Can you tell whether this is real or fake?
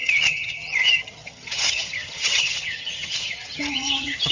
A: fake